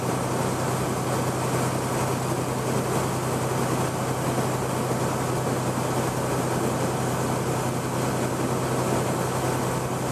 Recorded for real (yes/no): yes